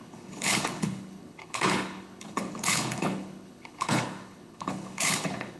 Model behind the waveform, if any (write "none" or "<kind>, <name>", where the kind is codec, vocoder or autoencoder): codec, HILCodec